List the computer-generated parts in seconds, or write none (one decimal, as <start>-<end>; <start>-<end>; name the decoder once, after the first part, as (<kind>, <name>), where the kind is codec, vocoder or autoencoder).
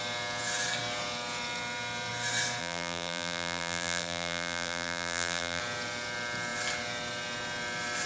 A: 2.6-5.6 (vocoder, BigVGAN v2)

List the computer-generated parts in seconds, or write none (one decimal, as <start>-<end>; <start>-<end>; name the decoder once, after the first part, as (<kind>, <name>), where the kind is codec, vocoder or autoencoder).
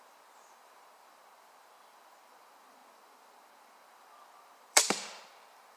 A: 0.0-5.8 (vocoder, BigVGAN v2)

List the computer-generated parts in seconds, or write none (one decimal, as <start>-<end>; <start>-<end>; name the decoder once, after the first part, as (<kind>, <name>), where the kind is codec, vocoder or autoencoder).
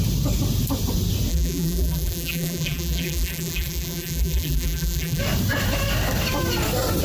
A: 1.3-5.2 (vocoder, BigVGAN v2)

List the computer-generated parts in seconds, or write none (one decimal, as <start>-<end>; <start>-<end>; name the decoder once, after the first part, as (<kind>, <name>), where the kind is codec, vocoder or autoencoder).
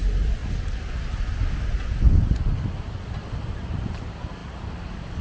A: 0.0-0.4 (vocoder, BigVGAN v2); 3.5-5.2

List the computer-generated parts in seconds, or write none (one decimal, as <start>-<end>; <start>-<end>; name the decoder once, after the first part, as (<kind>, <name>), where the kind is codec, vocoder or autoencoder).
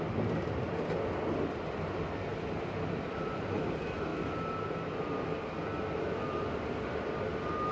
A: 0.0-4.1 (vocoder, BigVGAN v2); 5.8-7.7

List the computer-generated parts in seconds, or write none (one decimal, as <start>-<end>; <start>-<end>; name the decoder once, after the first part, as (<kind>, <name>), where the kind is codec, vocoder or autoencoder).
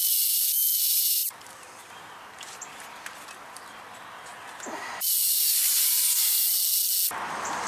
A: 1.2-1.9 (vocoder, BigVGAN v2)